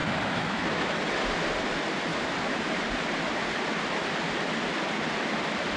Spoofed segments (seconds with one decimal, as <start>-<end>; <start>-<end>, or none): 0.0-1.0